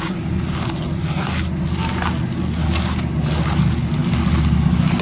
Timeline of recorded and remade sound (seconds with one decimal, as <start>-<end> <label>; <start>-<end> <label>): 0.0-5.0 recorded